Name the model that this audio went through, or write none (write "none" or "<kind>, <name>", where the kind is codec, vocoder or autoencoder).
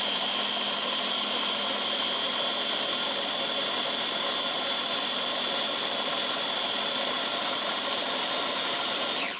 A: vocoder, BigVGAN v2